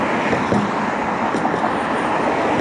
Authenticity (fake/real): real